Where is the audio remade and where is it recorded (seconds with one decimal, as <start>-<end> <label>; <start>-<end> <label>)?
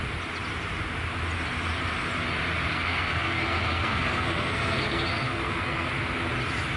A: 0.0-2.7 recorded; 2.7-5.9 remade; 5.9-6.8 recorded